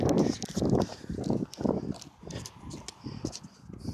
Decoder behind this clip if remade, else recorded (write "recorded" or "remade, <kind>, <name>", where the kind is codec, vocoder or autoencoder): recorded